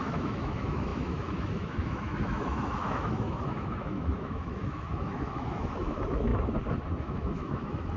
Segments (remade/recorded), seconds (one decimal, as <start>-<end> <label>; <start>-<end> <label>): 0.0-6.3 remade; 6.3-7.0 recorded; 7.0-8.0 remade